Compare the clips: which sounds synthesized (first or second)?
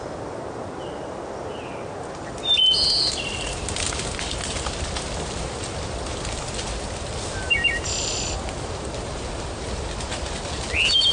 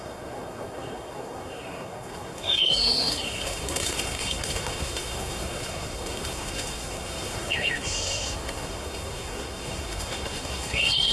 second